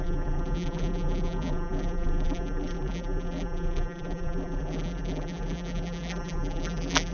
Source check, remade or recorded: remade